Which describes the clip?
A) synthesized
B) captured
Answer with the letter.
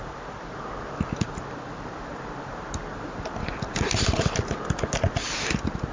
B